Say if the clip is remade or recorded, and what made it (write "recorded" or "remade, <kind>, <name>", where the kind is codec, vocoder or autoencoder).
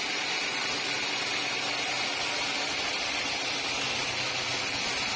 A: recorded